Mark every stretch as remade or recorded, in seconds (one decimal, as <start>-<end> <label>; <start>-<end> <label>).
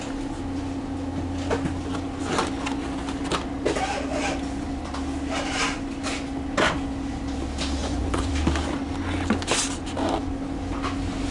0.0-7.8 recorded; 7.8-8.3 remade; 8.3-11.3 recorded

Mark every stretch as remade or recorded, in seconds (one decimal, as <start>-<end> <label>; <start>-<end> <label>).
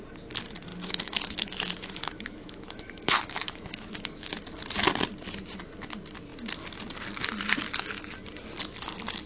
0.0-0.7 recorded; 0.7-4.4 remade; 4.4-9.3 recorded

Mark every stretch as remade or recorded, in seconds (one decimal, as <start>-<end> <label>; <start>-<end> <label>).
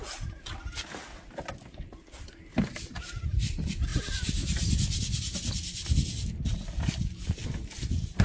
0.0-8.2 recorded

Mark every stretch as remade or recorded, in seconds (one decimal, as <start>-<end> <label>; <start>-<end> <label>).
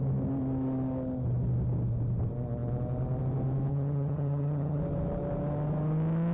0.0-3.7 recorded; 3.7-4.8 remade; 4.8-6.3 recorded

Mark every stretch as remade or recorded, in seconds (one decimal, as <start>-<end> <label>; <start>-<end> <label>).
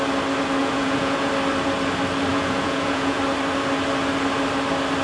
0.0-0.6 recorded; 0.6-1.3 remade; 1.3-2.3 recorded; 2.3-3.2 remade; 3.2-5.0 recorded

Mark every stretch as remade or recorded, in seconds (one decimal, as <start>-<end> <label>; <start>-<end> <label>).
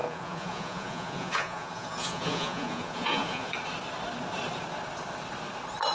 0.0-3.5 remade; 3.5-5.9 recorded